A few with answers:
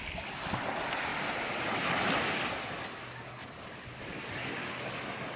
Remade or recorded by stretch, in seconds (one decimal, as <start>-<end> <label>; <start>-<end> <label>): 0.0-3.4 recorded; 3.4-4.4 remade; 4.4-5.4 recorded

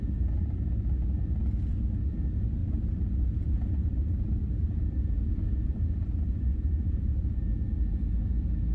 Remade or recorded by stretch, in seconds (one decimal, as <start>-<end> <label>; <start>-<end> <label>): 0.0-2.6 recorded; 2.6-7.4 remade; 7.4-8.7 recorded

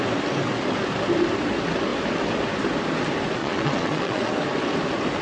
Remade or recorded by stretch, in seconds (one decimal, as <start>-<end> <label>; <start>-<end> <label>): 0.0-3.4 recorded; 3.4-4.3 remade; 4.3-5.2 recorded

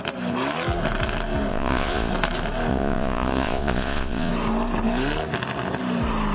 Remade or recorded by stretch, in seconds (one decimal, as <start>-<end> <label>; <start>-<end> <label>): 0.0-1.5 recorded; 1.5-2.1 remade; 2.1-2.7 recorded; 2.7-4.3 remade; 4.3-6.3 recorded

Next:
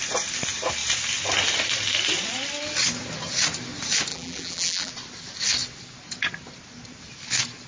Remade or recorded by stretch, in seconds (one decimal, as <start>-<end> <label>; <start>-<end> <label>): 0.0-4.1 recorded; 4.1-4.9 remade; 4.9-7.7 recorded